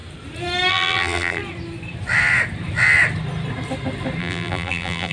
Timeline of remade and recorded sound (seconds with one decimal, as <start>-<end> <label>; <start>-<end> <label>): 0.0-0.7 recorded; 0.7-1.4 remade; 1.4-4.2 recorded; 4.2-5.1 remade